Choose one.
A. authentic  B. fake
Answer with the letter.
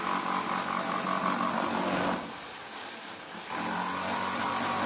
A